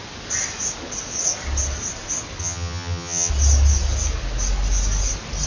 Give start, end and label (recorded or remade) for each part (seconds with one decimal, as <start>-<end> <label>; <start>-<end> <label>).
0.0-2.4 recorded; 2.4-3.3 remade; 3.3-5.5 recorded